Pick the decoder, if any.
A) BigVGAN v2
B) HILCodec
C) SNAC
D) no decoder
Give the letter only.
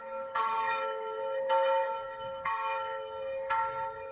C